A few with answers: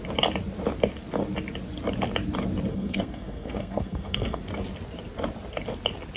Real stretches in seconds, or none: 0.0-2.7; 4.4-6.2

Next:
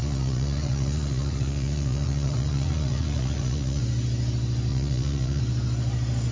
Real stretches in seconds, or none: 3.8-4.7; 5.4-6.3

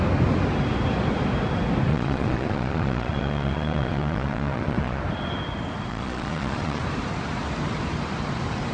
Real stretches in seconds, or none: 0.0-1.9; 5.0-5.9; 6.8-8.7

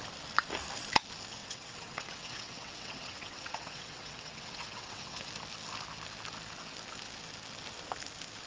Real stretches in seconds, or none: 0.0-1.4; 5.3-8.5

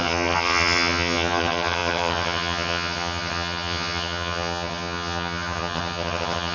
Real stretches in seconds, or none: none

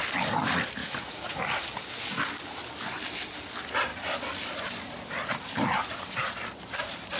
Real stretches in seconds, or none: 0.0-0.8; 1.4-7.2